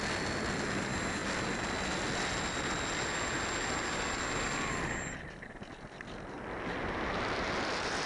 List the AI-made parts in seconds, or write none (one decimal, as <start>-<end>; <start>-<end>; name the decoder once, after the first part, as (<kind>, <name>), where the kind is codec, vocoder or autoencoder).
none